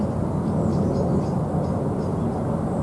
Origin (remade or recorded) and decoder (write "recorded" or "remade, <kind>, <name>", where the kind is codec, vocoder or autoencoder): recorded